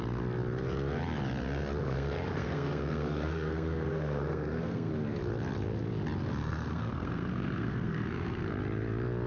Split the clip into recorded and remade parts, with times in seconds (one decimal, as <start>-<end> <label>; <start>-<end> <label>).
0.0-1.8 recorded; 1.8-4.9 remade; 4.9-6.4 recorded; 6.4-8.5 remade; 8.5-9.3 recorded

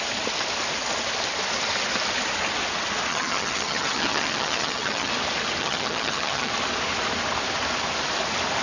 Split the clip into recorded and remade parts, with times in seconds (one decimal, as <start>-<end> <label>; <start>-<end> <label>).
0.0-3.1 recorded; 3.1-5.1 remade; 5.1-5.6 recorded; 5.6-6.5 remade; 6.5-8.6 recorded

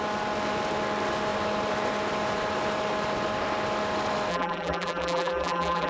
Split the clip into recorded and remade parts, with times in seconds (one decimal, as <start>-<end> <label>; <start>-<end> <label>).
0.0-4.3 recorded; 4.3-5.9 remade

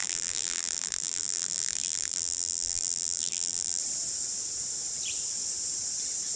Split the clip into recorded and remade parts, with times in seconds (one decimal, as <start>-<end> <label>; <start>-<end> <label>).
0.0-3.8 remade; 3.8-6.4 recorded